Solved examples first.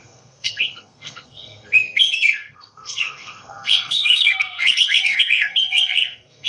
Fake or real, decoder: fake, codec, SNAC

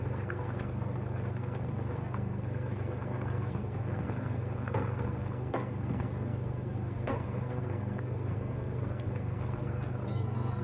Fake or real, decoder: fake, codec, SNAC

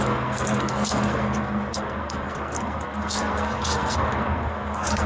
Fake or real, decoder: fake, codec, SNAC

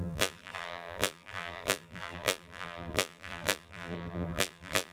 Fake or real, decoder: fake, vocoder, BigVGAN v2